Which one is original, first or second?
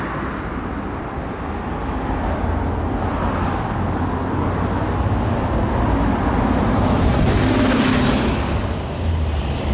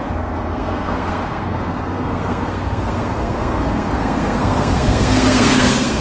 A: first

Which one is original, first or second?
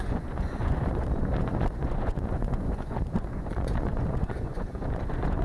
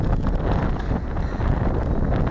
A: second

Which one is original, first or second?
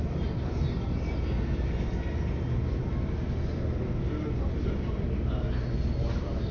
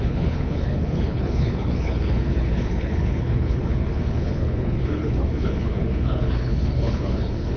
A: first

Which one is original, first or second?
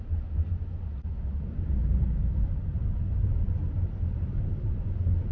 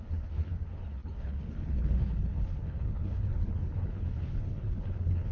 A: first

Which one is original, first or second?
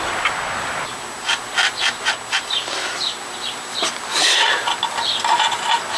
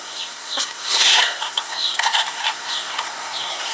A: first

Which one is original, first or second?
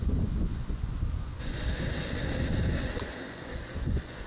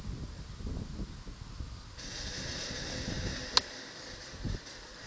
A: second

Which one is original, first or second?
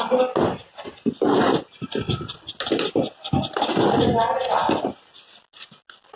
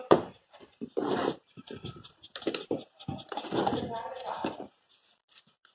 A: first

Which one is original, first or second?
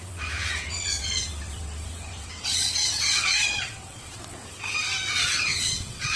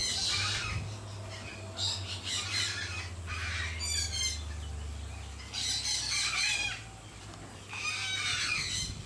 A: second